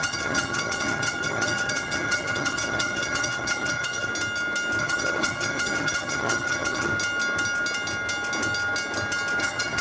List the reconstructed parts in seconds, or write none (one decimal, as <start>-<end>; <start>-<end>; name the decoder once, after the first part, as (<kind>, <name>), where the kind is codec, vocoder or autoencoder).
0.0-4.1 (vocoder, HiFi-GAN); 4.8-6.9; 9.4-9.8